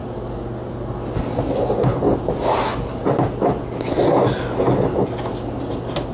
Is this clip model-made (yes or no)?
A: no